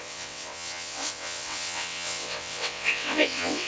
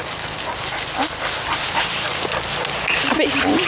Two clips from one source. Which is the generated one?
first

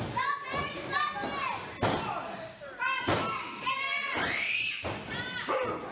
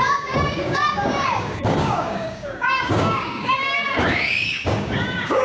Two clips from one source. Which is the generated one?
second